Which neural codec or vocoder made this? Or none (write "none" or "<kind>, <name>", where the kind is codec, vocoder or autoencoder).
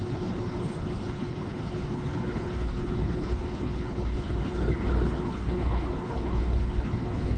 codec, HILCodec